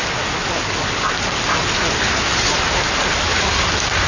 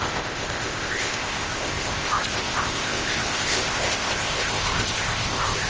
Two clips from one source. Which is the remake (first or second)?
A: second